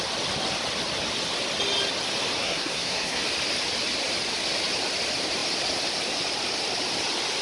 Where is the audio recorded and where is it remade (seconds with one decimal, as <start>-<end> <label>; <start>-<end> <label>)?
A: 0.0-2.4 recorded; 2.4-3.2 remade; 3.2-7.4 recorded